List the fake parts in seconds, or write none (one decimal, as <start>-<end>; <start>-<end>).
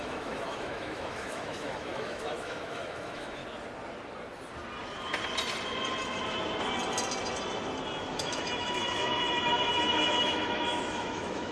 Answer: 0.0-3.4; 8.1-11.5